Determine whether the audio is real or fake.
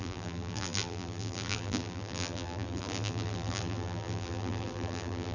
fake